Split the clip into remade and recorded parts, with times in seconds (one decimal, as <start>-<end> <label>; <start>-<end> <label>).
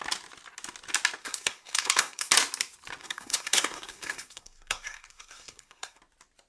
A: 0.0-1.2 recorded; 1.2-2.3 remade; 2.3-3.0 recorded; 3.0-6.0 remade; 6.0-6.5 recorded